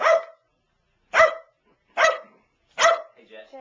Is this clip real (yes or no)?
yes